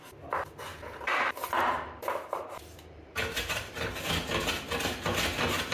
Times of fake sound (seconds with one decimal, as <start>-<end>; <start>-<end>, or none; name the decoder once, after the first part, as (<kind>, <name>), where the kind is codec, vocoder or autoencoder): 0.7-4.1 (vocoder, BigVGAN v2); 5.1-5.7